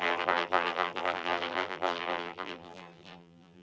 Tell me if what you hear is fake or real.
fake